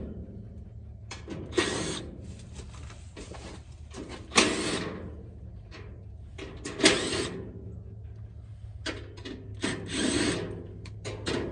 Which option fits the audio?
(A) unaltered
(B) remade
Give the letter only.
A